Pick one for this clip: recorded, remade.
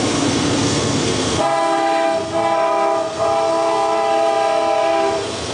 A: remade